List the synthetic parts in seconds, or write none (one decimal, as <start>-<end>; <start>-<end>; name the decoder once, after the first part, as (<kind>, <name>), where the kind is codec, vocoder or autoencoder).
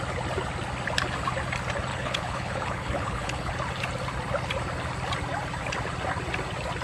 1.9-3.5 (codec, HILCodec)